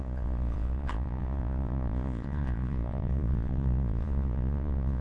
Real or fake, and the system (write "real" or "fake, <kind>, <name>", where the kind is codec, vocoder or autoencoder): fake, vocoder, Vocos